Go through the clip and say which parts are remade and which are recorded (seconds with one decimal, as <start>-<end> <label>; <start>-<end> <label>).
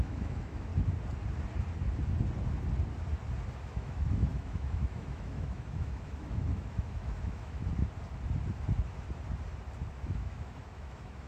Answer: 0.0-0.7 remade; 0.7-3.6 recorded; 3.6-7.7 remade; 7.7-9.9 recorded; 9.9-11.3 remade